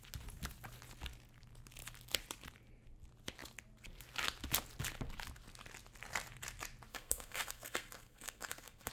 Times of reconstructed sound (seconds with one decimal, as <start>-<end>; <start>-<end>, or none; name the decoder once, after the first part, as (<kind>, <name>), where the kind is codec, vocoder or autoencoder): 6.9-8.9 (codec, SNAC)